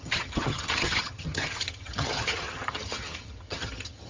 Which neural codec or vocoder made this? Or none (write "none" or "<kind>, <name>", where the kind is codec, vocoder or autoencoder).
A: vocoder, HiFi-GAN